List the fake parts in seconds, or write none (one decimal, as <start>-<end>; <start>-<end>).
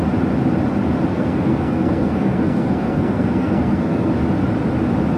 1.1-4.2